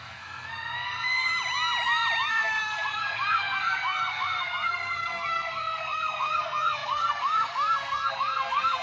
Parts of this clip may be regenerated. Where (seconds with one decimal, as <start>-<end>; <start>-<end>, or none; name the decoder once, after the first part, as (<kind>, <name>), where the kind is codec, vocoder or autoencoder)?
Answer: 0.0-1.3 (codec, SNAC); 2.3-8.8